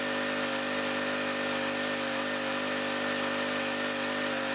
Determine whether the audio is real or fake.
real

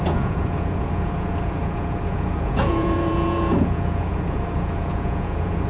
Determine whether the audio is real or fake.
fake